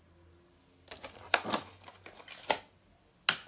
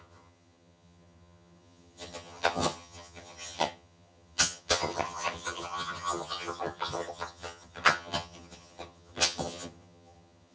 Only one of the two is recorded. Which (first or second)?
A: first